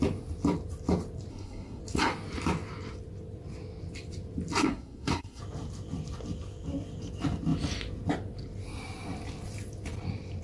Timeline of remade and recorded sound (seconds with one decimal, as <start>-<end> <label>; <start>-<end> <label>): 0.0-1.3 recorded; 1.3-1.8 remade; 1.8-4.6 recorded; 4.6-5.4 remade; 5.4-10.4 recorded